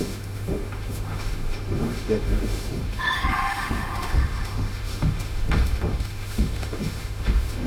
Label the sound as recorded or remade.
remade